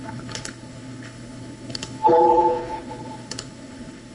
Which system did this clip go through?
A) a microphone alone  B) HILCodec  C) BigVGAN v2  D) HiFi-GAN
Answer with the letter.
B